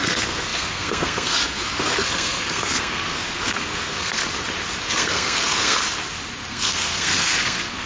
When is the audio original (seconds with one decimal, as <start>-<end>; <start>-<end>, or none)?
4.2-4.8; 5.8-6.5